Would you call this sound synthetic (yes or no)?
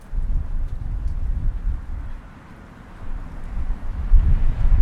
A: yes